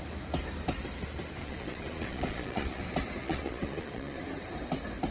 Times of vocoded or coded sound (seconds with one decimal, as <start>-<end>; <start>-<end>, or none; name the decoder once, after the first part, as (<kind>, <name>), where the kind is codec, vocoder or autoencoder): 1.4-2.8 (vocoder, Vocos); 3.2-4.2